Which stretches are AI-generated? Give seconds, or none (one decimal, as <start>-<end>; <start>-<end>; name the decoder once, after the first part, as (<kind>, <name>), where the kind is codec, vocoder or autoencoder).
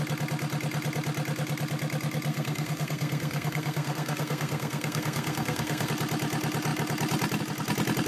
2.3-5.9 (codec, SNAC)